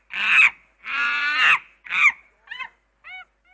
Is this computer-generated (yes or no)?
no